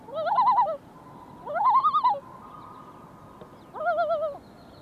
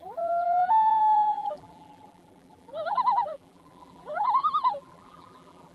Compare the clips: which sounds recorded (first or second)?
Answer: first